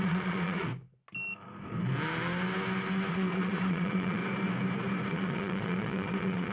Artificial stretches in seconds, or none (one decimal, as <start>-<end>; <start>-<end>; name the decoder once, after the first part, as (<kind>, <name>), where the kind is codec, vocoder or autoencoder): 0.0-0.7 (vocoder, Vocos); 3.1-4.2; 5.1-6.5